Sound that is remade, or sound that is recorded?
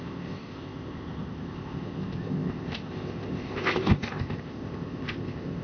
remade